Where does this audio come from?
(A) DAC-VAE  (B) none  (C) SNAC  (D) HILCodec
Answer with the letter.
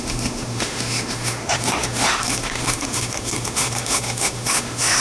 A